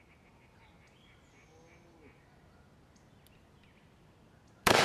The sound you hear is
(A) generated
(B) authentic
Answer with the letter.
B